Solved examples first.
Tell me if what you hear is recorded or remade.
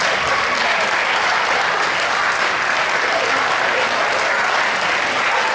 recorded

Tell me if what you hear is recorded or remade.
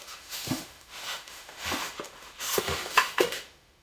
remade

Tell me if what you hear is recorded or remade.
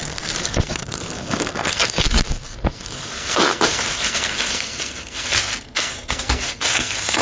remade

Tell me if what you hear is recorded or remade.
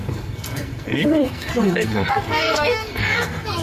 remade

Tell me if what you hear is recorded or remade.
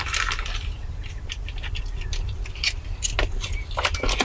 remade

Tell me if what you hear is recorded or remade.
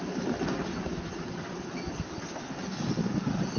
recorded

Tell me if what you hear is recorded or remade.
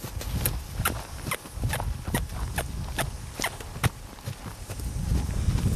recorded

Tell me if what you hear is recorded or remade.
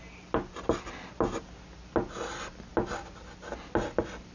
recorded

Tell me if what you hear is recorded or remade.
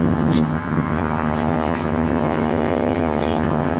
remade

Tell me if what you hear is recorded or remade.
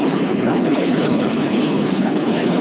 remade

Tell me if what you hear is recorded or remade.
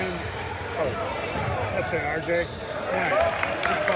recorded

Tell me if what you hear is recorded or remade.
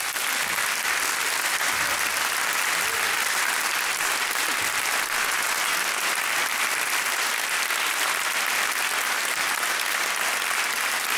recorded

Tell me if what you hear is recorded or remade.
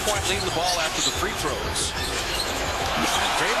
remade